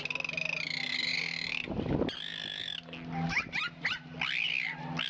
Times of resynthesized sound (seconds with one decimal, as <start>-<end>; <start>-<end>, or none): none